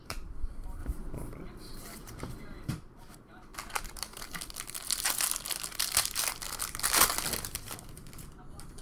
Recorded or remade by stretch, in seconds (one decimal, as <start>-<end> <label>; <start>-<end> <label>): 0.0-3.5 remade; 3.5-7.8 recorded; 7.8-8.8 remade